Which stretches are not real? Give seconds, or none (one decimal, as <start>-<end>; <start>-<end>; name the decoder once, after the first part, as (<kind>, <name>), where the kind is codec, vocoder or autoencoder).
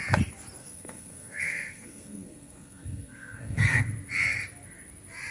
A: 0.6-3.8 (codec, SNAC)